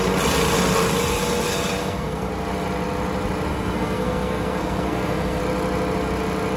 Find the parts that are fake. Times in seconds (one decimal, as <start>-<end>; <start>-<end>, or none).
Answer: 1.8-2.3; 3.5-5.4